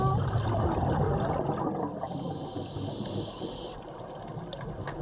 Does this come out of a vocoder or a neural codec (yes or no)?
no